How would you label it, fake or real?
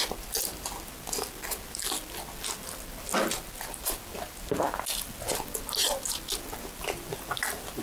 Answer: real